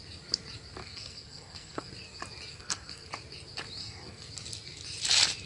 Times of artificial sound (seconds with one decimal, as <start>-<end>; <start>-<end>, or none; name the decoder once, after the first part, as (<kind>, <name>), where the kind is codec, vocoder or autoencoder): 0.8-1.9 (codec, SNAC); 2.5-3.1; 3.8-4.3